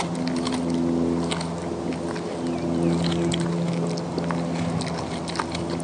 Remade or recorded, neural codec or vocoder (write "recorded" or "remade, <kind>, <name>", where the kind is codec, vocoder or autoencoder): recorded